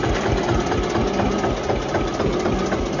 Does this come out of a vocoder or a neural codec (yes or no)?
no